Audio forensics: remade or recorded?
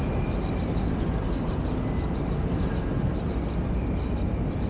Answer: recorded